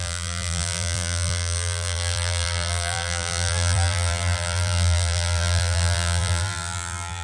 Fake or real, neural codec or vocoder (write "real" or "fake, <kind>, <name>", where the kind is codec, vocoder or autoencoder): fake, vocoder, BigVGAN v2